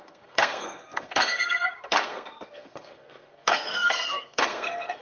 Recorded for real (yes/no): no